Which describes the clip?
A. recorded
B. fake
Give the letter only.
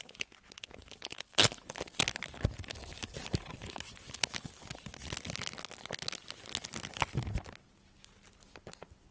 A